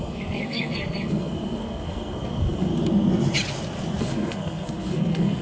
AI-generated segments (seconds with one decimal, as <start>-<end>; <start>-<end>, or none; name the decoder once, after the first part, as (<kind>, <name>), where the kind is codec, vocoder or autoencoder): 0.0-2.7 (codec, SNAC); 4.0-5.4